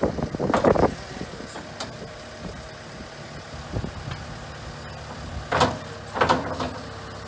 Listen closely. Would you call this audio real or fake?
real